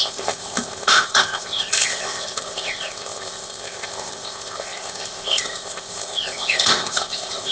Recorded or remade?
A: remade